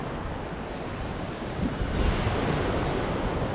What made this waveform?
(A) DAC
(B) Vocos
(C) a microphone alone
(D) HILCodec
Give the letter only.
C